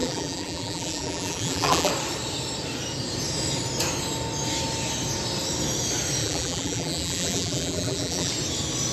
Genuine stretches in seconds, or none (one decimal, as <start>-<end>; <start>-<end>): 1.9-6.2; 8.3-8.9